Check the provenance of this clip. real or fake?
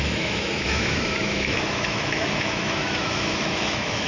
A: fake